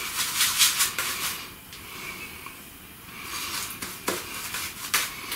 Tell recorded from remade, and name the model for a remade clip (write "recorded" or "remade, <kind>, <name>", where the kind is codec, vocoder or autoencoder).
recorded